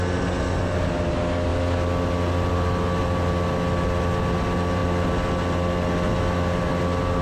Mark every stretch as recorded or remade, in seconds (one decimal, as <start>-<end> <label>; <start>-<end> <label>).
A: 0.0-7.2 recorded